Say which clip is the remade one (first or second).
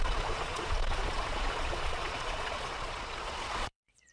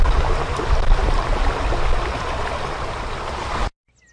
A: first